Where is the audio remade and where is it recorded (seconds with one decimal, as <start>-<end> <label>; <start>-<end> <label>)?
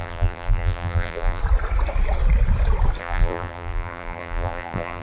0.0-1.4 remade; 1.4-3.0 recorded; 3.0-5.0 remade